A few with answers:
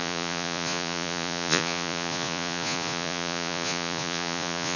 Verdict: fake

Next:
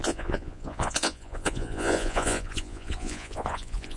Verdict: fake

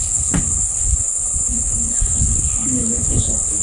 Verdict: fake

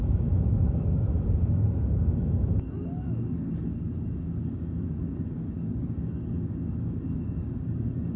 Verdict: fake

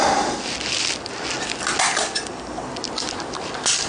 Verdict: real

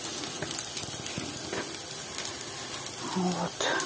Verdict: real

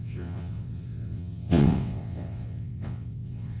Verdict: fake